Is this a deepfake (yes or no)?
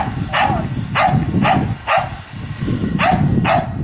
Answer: no